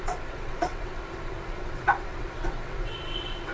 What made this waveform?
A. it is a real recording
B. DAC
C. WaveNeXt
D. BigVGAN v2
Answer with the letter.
C